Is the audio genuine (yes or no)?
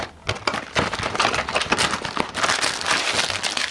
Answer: yes